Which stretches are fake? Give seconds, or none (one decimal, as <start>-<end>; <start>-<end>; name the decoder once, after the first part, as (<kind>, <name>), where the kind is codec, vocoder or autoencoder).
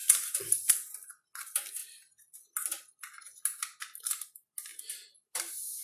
0.0-0.7 (vocoder, BigVGAN v2)